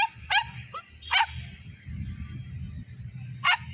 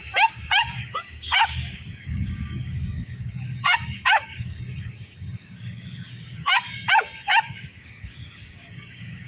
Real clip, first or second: first